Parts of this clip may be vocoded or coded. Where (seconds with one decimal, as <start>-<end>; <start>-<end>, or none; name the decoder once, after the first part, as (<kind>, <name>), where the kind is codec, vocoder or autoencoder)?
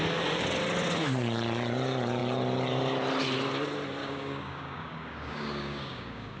4.0-6.4 (codec, DAC)